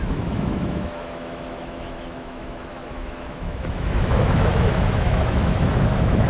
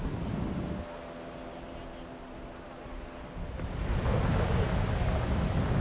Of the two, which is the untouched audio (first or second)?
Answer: second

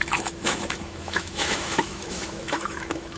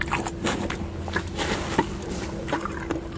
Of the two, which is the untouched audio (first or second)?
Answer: second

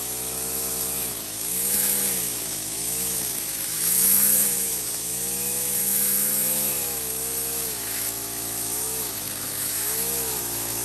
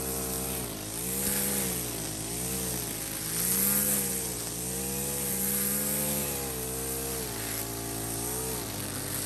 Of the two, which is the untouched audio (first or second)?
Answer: second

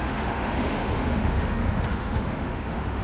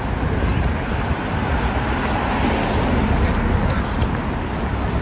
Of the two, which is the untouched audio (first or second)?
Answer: second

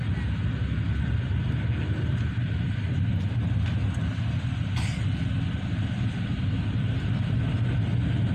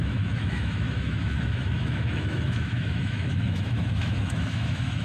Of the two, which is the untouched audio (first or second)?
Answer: first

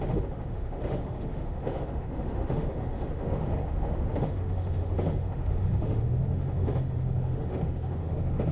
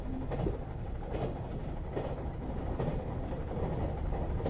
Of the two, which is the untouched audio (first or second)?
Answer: second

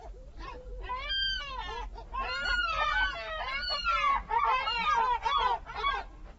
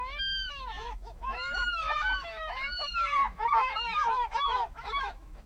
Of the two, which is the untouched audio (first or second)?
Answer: first